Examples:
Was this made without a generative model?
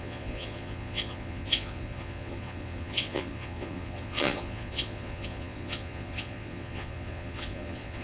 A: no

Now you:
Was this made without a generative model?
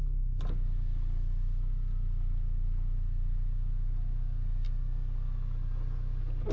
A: yes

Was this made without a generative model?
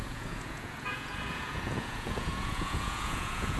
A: no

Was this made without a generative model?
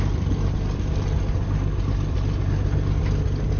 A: yes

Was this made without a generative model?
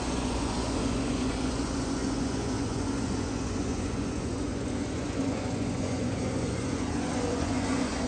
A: no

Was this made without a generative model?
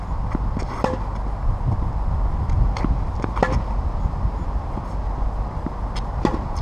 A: yes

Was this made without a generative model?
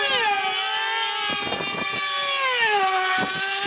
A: yes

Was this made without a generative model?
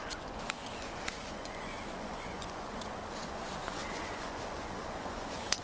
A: no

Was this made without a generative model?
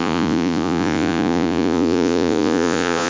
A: no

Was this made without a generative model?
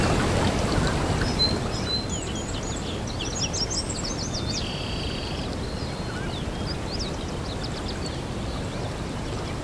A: yes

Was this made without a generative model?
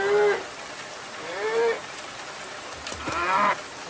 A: yes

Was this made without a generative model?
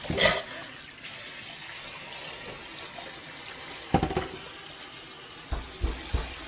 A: yes